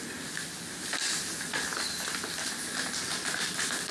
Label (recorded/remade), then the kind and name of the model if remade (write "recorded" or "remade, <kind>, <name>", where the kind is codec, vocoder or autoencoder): recorded